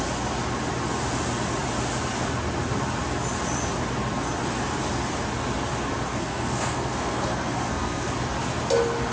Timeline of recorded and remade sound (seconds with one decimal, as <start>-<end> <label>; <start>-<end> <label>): 0.0-6.1 recorded; 6.1-8.1 remade; 8.1-9.1 recorded